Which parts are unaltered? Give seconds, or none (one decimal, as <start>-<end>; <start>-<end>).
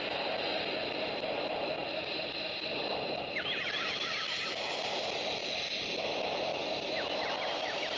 0.0-8.0